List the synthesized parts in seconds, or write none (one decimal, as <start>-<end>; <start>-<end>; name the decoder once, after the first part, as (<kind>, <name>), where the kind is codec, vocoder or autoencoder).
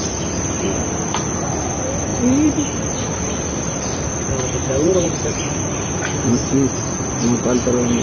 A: 2.1-3.3 (vocoder, BigVGAN v2); 4.6-5.9; 6.4-7.1